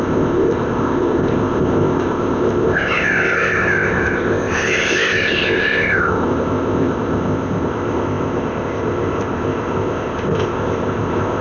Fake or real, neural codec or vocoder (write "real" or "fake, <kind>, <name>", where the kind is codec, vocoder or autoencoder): fake, codec, ZipCodec